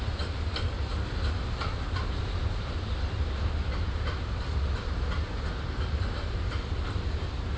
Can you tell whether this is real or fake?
real